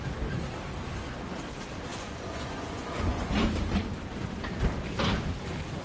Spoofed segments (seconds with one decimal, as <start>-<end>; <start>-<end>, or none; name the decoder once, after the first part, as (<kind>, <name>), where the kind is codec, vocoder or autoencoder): 1.9-3.4 (vocoder, Vocos)